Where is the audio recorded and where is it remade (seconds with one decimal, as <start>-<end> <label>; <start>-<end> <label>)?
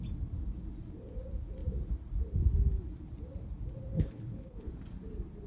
0.0-3.9 recorded; 3.9-4.7 remade; 4.7-5.5 recorded